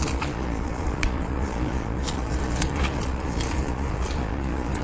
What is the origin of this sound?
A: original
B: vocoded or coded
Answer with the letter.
B